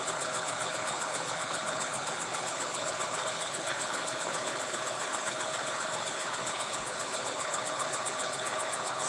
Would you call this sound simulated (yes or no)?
yes